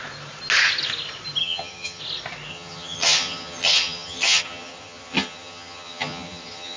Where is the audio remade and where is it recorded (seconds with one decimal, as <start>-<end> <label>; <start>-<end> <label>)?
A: 0.0-1.4 recorded; 1.4-2.0 remade; 2.0-2.5 recorded; 2.5-6.8 remade